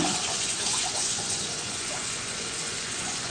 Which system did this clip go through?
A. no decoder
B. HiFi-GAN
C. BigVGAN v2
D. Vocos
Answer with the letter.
D